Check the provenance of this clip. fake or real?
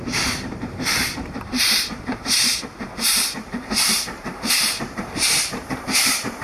fake